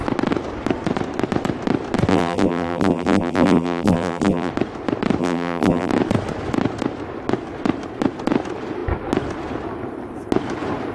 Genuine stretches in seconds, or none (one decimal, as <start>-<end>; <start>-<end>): 0.0-2.1; 4.5-5.2; 5.9-10.9

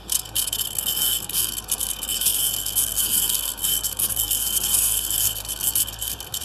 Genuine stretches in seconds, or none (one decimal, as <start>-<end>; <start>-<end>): none

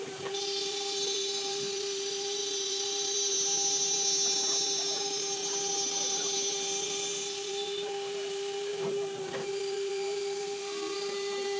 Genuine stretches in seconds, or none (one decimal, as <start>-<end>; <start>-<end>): none

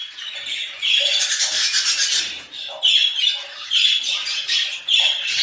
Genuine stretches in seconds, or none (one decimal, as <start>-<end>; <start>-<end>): 0.0-3.2

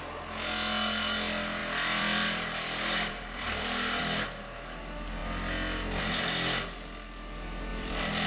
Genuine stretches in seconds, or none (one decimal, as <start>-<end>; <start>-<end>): 0.0-1.6; 4.0-7.7